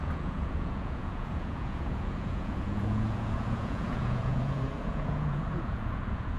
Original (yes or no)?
no